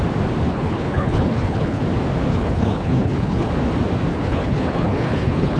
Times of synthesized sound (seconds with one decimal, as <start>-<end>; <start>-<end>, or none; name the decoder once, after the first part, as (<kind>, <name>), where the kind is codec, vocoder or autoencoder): 0.5-1.8 (codec, HILCodec); 2.3-3.5; 4.1-5.6